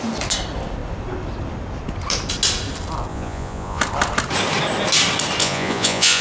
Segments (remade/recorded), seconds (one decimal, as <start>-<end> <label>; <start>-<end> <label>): 0.0-3.1 recorded; 3.1-3.8 remade; 3.8-5.4 recorded; 5.4-6.2 remade